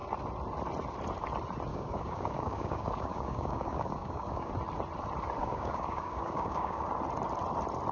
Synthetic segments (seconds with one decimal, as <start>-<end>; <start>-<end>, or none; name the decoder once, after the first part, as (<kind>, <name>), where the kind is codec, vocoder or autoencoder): 1.7-4.5 (codec, DAC); 5.4-6.9